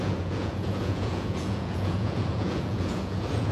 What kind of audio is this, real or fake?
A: fake